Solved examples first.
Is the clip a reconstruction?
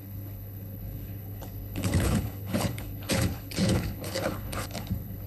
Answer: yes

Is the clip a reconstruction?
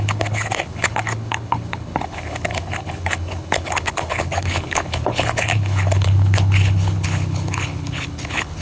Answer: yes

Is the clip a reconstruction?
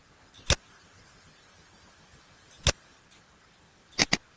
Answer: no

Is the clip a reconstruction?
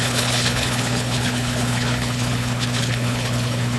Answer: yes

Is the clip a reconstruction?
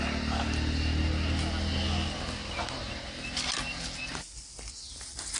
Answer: no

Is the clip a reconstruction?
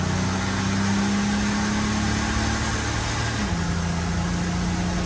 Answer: no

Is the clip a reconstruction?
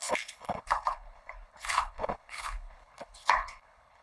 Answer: yes